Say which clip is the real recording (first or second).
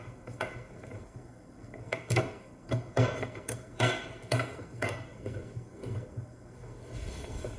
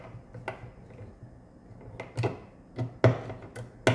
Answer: second